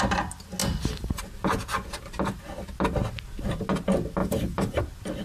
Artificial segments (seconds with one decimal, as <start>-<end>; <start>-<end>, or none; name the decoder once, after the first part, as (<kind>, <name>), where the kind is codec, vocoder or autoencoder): 0.6-1.2 (vocoder, BigVGAN v2); 4.2-4.8